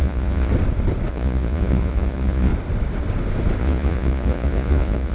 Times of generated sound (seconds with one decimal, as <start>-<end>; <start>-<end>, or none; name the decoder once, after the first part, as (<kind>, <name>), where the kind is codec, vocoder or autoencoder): 0.0-0.5 (vocoder, Vocos); 1.1-2.5; 3.6-5.1